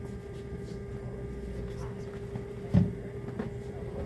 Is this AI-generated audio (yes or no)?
no